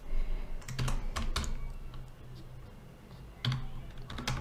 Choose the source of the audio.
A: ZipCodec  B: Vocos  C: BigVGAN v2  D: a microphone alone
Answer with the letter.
D